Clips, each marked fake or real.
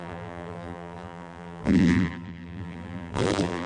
fake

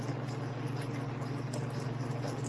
real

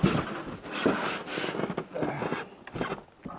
real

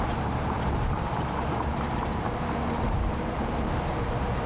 fake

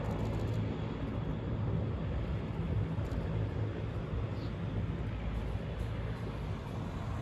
real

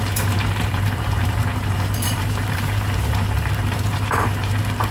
fake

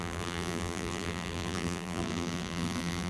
fake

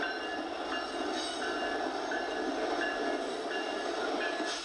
fake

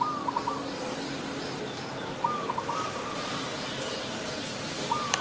real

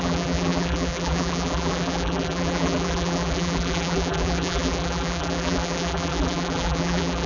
fake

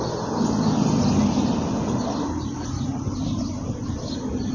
real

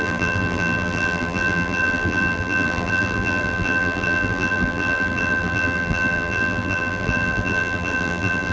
fake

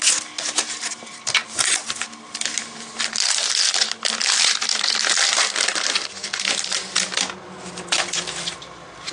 real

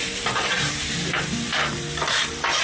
fake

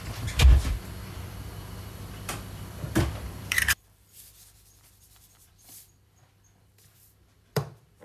fake